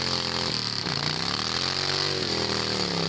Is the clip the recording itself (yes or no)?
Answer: yes